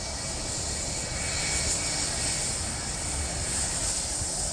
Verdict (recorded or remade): recorded